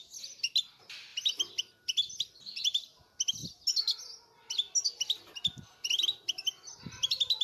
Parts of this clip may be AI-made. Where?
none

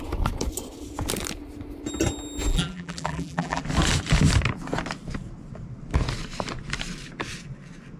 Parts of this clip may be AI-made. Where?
2.5-3.6 (vocoder, BigVGAN v2)

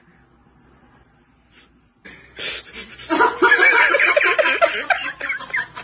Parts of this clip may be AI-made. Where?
5.0-5.8 (vocoder, BigVGAN v2)

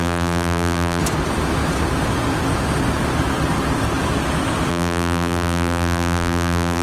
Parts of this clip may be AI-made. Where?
0.0-1.0 (vocoder, BigVGAN v2); 4.7-6.8

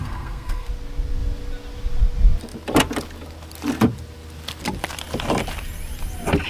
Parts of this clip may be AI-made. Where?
0.0-0.7 (codec, SNAC)